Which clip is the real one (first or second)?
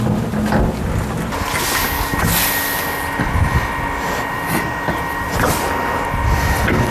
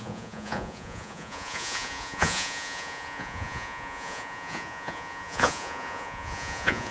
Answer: first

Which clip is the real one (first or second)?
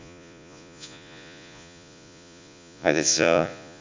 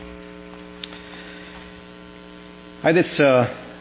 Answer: second